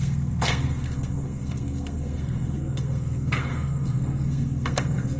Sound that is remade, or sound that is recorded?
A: remade